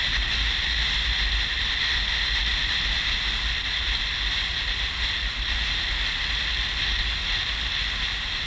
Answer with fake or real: real